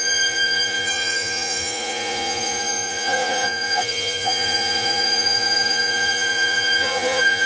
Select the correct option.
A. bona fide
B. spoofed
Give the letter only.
B